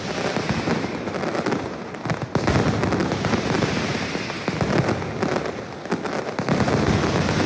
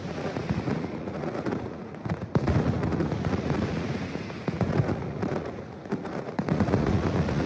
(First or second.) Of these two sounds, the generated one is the second